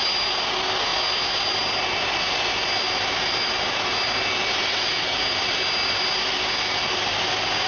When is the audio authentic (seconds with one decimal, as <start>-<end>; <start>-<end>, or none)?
0.0-7.7